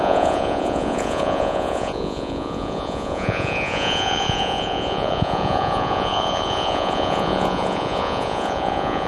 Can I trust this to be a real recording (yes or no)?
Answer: no